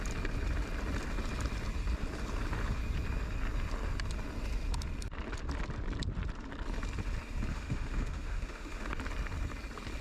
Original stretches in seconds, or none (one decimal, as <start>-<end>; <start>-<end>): 0.0-7.5; 8.9-10.0

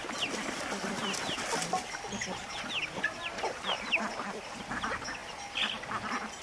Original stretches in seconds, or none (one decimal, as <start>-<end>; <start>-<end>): 0.0-6.4

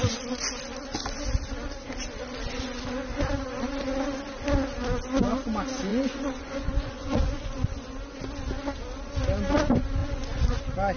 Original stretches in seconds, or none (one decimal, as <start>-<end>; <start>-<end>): 0.0-5.9; 7.7-10.0; 10.6-11.0

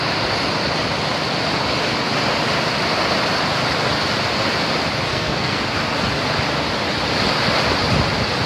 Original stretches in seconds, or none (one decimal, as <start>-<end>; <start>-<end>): 0.0-5.1; 5.6-8.5

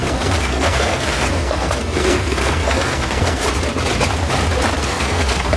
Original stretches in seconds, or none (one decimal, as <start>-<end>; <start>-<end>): 3.4-4.8

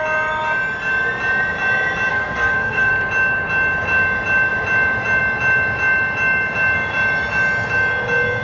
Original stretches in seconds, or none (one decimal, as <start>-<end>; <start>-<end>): 0.0-2.1; 2.9-8.4

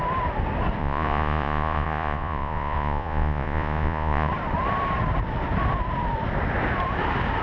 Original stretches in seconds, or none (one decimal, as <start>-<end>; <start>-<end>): 0.0-0.8; 4.3-7.4